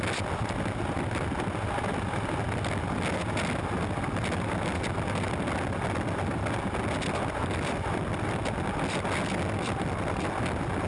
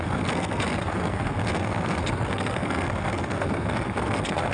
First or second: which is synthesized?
second